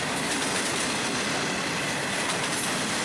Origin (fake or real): real